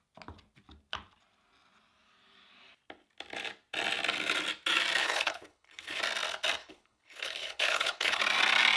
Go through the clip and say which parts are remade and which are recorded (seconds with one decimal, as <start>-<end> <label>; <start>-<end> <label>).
0.0-5.0 recorded; 5.0-6.0 remade; 6.0-6.6 recorded; 6.6-8.2 remade; 8.2-8.8 recorded